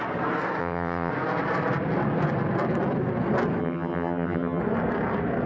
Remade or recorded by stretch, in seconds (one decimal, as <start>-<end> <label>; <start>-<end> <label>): 0.0-0.6 recorded; 0.6-1.1 remade; 1.1-3.6 recorded; 3.6-4.6 remade; 4.6-5.5 recorded